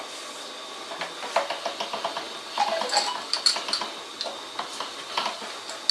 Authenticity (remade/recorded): recorded